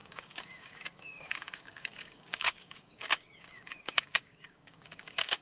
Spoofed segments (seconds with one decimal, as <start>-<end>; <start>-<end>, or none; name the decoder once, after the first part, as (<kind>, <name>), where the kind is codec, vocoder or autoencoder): 0.0-5.4 (codec, DAC)